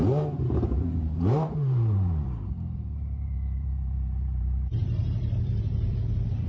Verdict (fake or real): fake